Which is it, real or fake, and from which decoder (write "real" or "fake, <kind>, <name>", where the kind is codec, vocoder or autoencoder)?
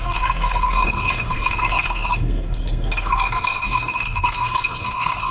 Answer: fake, codec, SNAC